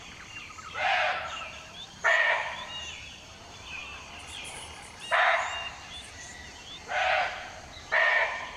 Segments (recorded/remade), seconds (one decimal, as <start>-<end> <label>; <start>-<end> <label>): 0.0-3.8 remade; 3.8-4.4 recorded; 4.4-6.3 remade; 6.3-6.9 recorded; 6.9-8.6 remade